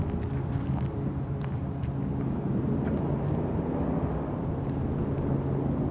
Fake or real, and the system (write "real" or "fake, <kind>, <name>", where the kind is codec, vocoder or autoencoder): real